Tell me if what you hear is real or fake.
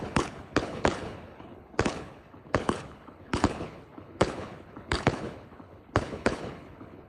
fake